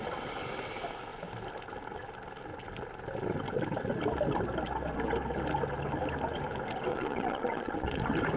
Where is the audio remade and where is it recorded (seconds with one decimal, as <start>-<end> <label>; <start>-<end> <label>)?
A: 0.0-6.9 recorded; 6.9-8.0 remade; 8.0-8.4 recorded